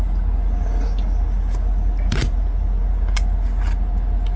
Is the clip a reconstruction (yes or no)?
no